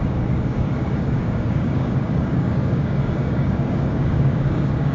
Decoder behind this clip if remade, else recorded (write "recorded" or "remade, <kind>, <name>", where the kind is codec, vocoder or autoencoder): remade, codec, DAC